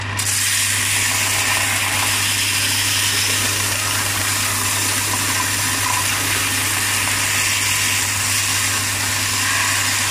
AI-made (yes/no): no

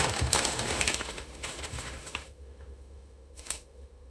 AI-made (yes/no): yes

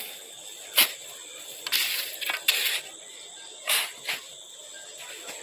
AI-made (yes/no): no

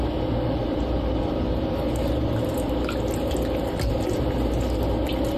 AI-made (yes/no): no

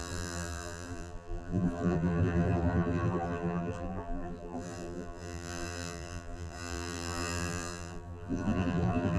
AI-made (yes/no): yes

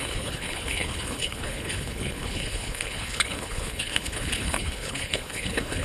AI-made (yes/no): yes